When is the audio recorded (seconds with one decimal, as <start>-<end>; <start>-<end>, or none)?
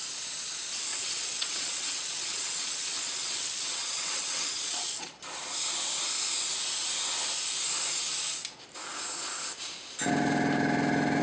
0.0-0.9; 5.1-11.2